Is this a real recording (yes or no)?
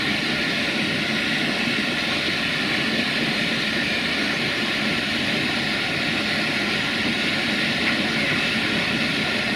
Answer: yes